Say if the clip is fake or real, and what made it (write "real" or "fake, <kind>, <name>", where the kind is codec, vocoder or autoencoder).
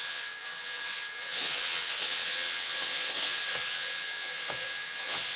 fake, vocoder, WaveNeXt